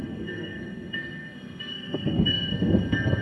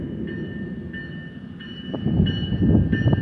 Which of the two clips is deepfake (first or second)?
first